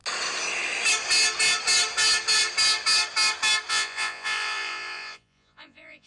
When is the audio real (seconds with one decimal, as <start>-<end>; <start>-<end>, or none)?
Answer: 0.0-3.7